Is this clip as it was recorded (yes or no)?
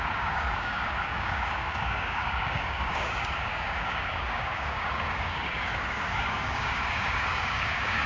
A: no